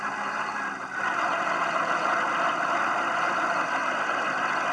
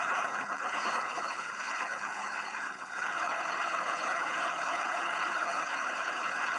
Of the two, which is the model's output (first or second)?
second